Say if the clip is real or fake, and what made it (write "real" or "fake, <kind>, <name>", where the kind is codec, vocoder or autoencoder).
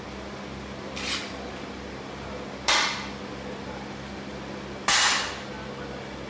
real